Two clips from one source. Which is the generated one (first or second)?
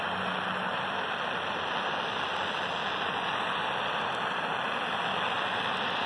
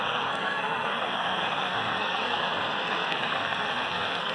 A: second